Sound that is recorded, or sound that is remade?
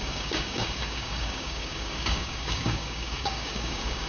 remade